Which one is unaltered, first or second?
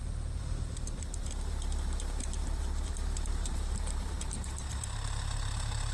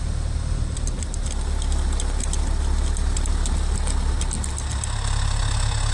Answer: second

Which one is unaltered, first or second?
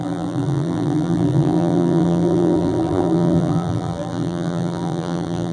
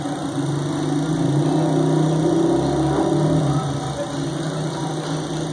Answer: second